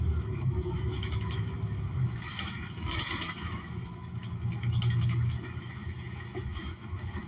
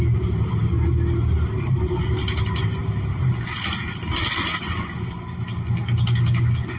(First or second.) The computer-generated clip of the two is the first